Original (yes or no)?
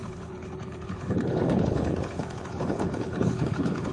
no